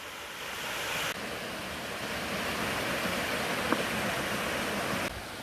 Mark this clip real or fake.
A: real